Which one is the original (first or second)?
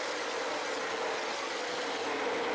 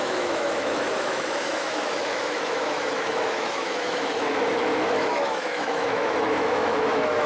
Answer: first